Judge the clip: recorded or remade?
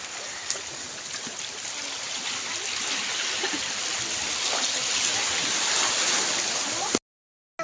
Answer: recorded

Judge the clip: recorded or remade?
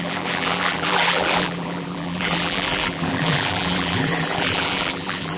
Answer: remade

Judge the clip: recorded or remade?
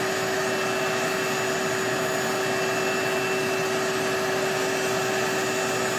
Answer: recorded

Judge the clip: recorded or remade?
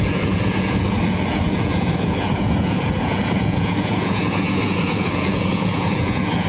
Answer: remade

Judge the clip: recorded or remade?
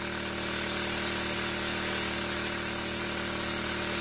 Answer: recorded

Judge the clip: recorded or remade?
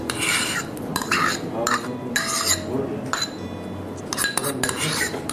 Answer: recorded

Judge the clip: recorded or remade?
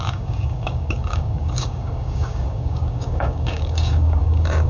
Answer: remade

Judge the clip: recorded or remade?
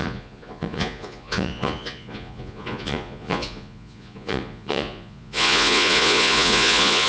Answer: remade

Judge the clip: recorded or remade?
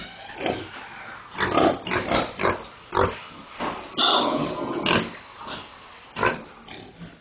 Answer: recorded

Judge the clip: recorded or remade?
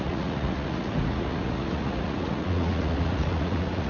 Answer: remade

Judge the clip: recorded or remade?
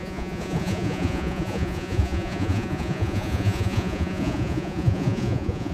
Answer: remade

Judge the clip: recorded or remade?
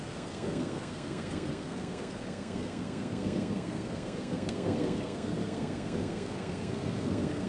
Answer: remade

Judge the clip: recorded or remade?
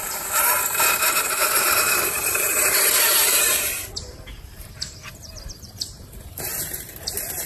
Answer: remade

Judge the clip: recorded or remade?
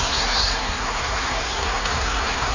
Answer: remade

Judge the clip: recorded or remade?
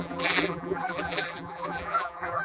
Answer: remade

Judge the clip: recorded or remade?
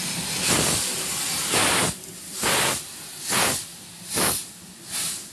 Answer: recorded